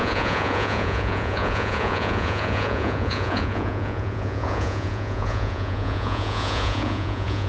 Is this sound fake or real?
fake